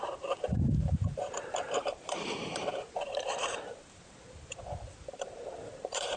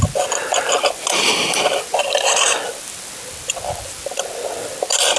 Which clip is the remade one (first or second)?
first